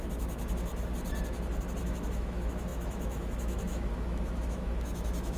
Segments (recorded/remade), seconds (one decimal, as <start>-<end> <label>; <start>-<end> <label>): 0.0-0.7 remade; 0.7-1.8 recorded; 1.8-5.4 remade